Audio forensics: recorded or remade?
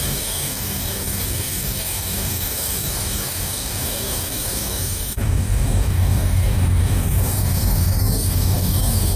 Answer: remade